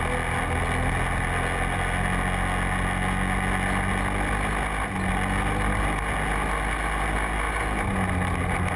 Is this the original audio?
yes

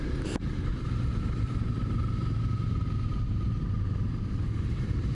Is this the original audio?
no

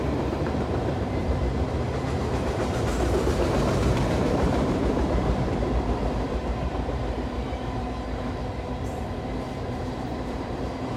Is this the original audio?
no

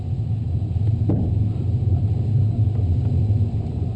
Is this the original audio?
yes